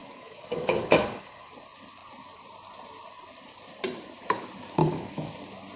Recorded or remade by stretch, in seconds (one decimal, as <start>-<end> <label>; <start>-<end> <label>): 0.0-1.5 remade; 1.5-4.8 recorded; 4.8-5.3 remade; 5.3-5.8 recorded